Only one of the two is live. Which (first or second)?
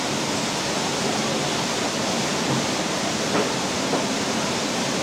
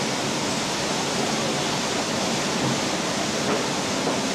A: second